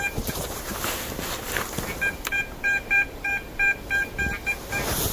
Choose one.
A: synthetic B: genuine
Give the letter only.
A